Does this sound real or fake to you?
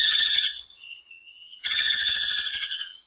fake